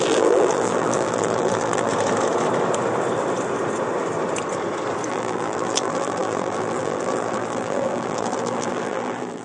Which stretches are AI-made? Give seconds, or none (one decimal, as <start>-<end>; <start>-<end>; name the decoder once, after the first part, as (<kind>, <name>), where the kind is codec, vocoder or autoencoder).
0.0-1.9 (vocoder, BigVGAN v2); 5.1-9.4